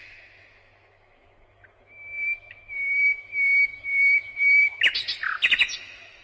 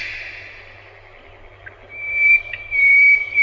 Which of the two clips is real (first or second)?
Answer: second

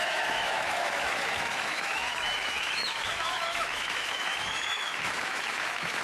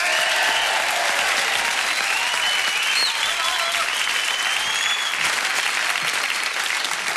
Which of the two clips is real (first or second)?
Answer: second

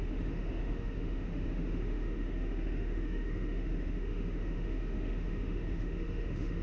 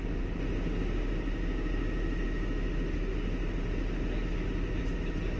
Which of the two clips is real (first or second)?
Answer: second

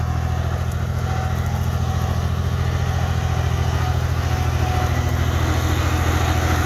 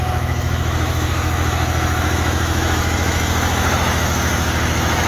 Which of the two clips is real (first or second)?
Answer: first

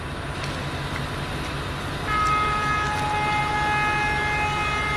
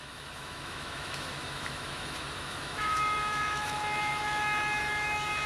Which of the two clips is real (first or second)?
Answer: first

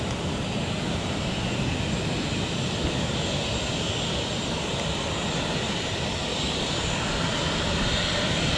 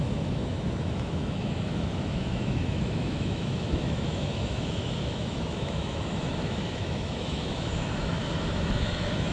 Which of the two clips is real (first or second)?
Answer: first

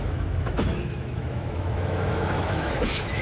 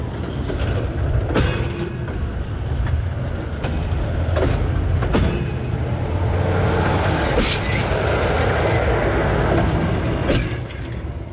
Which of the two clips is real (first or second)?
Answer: second